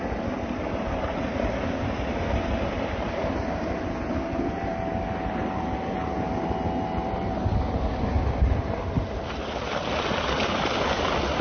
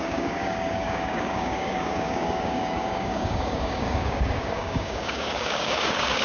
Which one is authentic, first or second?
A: first